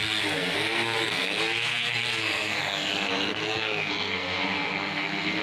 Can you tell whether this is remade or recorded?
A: remade